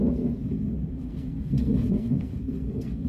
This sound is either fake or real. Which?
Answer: fake